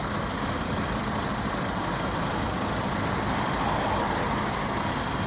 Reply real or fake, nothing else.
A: real